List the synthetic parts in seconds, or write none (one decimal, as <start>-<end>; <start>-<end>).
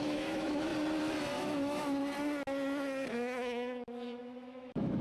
0.0-0.7; 1.4-2.0; 3.1-5.0